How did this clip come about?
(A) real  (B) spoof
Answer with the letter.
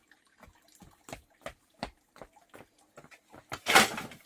A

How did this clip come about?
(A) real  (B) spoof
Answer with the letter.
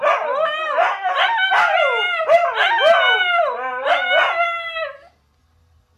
A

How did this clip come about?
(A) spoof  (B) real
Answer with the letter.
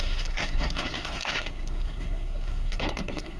A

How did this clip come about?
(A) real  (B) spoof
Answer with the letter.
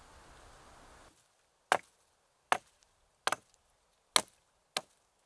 A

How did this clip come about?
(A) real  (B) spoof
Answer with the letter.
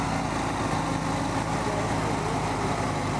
A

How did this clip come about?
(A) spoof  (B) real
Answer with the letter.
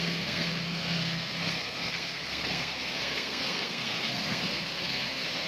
A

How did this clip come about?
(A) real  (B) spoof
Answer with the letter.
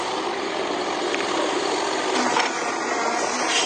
A